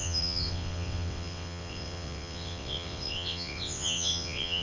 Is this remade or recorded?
remade